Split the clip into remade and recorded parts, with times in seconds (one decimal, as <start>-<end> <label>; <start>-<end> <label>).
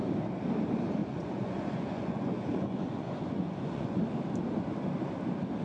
0.0-1.0 recorded; 1.0-4.0 remade; 4.0-5.6 recorded